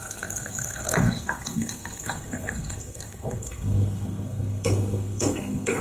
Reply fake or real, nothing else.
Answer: fake